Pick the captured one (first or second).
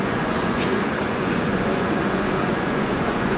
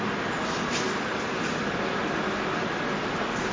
second